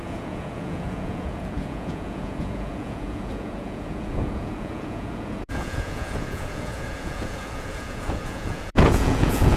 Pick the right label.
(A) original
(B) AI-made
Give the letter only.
B